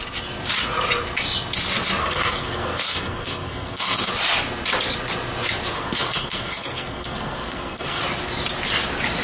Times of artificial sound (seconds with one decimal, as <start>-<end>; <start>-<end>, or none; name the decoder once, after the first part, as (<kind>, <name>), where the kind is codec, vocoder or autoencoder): 2.0-4.1 (codec, SNAC); 5.7-8.0